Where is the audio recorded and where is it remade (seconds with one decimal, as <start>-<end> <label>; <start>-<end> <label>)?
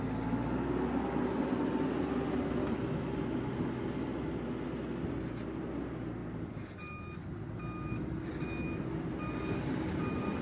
0.0-10.4 recorded